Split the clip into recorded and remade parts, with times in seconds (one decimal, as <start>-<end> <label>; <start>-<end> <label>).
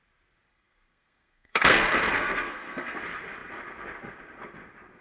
0.0-0.5 recorded; 0.5-3.0 remade; 3.0-5.0 recorded